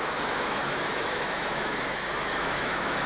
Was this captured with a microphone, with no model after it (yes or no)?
no